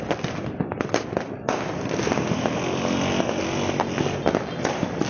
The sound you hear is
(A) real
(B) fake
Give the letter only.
A